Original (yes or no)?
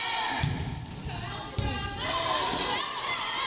yes